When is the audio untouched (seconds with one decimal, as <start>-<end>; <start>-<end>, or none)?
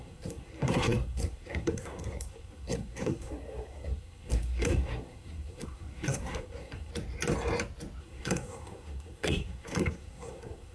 6.9-8.0